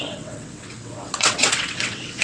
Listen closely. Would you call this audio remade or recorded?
remade